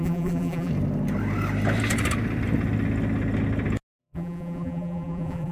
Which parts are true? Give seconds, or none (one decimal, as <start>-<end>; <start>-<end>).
0.7-4.0